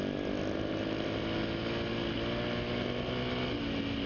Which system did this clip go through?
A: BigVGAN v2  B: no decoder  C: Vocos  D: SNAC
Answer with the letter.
B